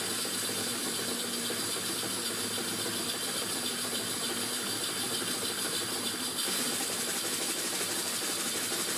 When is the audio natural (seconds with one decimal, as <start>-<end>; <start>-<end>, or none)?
0.8-3.2